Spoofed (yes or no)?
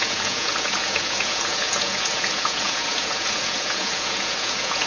yes